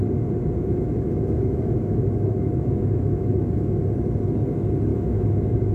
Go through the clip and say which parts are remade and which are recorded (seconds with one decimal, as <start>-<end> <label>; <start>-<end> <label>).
0.0-0.6 recorded; 0.6-3.8 remade; 3.8-4.9 recorded; 4.9-5.7 remade